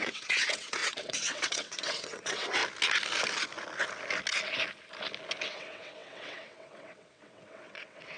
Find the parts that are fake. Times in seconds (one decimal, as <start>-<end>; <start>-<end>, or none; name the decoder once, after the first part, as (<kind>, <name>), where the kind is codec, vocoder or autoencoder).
0.0-2.6 (vocoder, WaveNeXt); 5.5-8.2